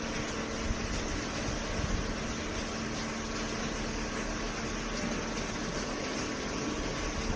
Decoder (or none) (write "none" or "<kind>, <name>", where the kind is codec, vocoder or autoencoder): none